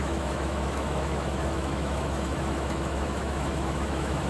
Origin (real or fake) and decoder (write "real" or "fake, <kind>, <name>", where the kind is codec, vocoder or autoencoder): fake, autoencoder, DAC-VAE